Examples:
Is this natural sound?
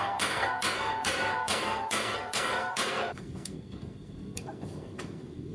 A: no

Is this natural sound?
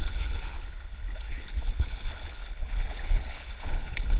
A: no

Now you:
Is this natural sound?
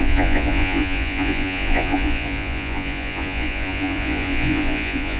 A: no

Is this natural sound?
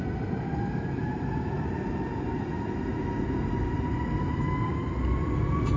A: yes